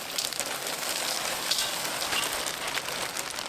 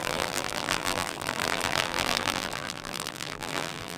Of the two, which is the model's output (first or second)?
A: second